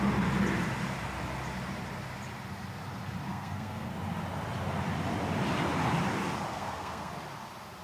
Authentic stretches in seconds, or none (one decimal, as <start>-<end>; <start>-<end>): 0.0-3.3; 3.9-6.5; 7.1-7.8